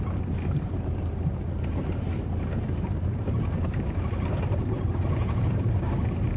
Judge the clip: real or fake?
fake